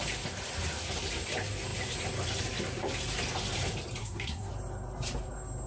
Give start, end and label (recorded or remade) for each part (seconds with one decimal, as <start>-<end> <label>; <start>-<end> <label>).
0.0-4.0 recorded; 4.0-4.5 remade; 4.5-5.7 recorded